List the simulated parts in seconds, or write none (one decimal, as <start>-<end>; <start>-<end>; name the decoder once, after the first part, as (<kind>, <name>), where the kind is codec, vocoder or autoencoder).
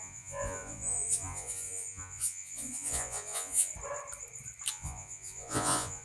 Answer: 0.0-3.7 (vocoder, Vocos); 4.7-6.0